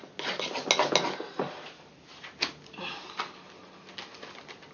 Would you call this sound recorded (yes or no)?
yes